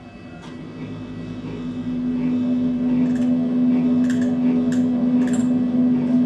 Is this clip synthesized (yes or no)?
no